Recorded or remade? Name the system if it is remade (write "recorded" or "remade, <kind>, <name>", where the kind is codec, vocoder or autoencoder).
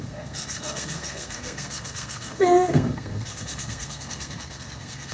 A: remade, codec, SNAC